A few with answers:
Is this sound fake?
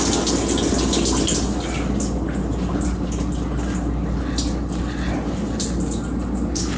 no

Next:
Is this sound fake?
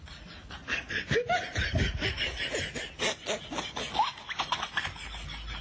no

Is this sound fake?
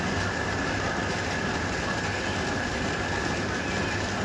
no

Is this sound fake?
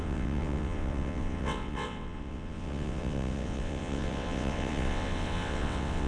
yes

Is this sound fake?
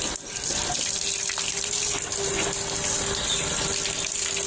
no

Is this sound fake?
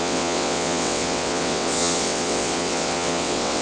yes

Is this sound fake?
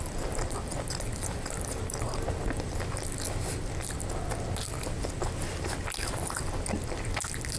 no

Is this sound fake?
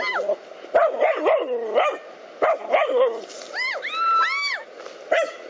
no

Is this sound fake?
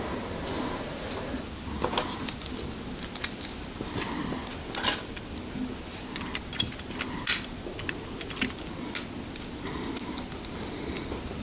no